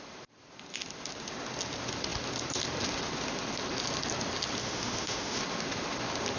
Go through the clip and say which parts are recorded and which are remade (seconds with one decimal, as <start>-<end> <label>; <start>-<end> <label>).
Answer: 0.0-4.6 recorded; 4.6-5.4 remade; 5.4-6.4 recorded